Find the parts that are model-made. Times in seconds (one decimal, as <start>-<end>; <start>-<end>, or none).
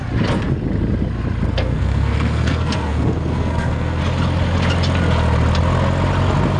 1.5-4.0